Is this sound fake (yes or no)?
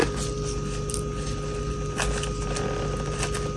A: no